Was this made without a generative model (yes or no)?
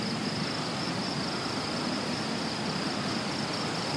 no